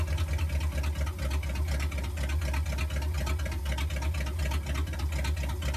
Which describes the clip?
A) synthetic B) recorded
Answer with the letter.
B